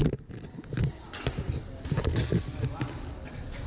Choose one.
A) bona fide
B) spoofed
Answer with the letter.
A